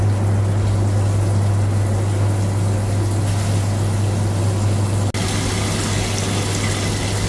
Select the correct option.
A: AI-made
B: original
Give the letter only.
B